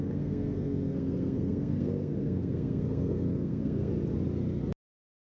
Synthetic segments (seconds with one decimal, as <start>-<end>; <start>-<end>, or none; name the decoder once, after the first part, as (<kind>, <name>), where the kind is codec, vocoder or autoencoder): 0.0-3.9 (codec, SNAC)